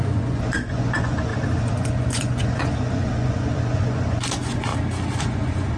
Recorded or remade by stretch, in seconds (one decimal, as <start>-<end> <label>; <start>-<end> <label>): 0.0-4.7 remade; 4.7-5.2 recorded; 5.2-5.8 remade